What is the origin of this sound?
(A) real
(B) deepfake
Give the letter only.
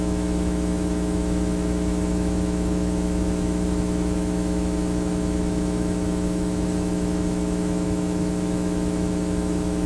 B